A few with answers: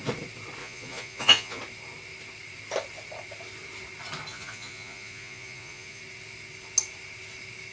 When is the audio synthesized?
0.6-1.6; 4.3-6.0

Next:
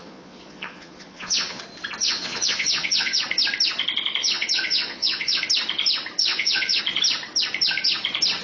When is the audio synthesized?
0.0-1.6; 2.0-3.2; 4.2-5.4; 6.2-6.8